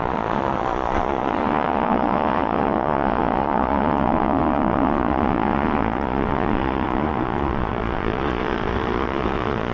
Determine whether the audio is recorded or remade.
remade